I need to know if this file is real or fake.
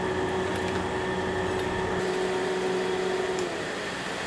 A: real